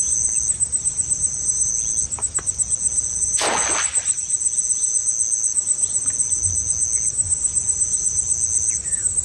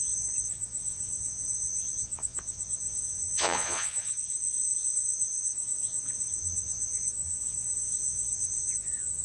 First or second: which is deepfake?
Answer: second